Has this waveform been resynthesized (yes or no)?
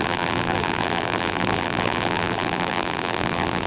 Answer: yes